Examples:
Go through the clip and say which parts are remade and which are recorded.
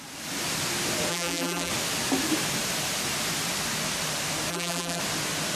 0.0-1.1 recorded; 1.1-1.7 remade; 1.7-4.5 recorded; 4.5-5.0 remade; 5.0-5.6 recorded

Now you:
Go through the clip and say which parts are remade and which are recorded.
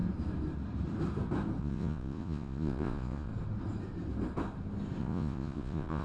0.0-1.6 recorded; 1.6-3.3 remade; 3.3-5.0 recorded; 5.0-6.0 remade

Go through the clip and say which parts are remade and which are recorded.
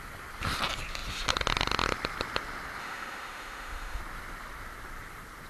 0.0-2.8 recorded; 2.8-4.0 remade; 4.0-5.5 recorded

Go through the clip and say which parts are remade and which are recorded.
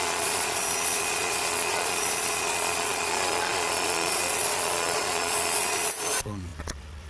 0.0-7.1 remade